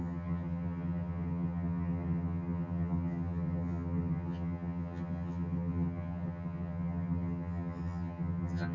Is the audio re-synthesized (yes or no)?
yes